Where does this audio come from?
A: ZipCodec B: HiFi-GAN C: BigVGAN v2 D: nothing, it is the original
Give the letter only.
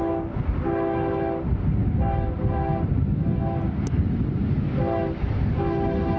D